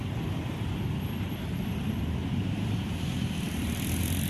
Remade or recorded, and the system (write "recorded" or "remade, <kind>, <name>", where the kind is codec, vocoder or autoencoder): remade, vocoder, BigVGAN v2